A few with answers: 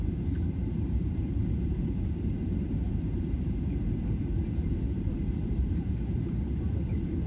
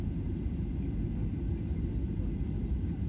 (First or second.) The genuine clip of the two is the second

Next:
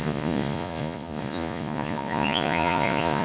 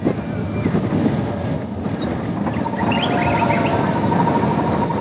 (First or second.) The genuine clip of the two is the second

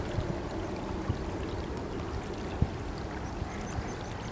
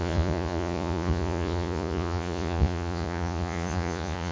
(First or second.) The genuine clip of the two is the first